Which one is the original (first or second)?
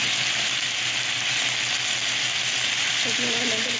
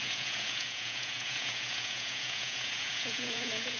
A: first